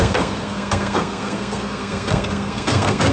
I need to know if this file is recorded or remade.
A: remade